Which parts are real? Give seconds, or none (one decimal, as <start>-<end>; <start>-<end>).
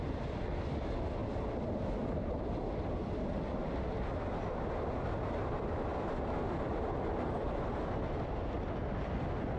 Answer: 0.0-5.9; 8.3-9.6